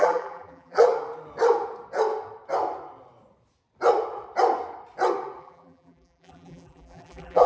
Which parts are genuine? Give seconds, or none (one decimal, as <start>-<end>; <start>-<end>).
0.9-5.4